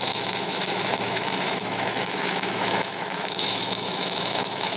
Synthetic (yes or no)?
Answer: yes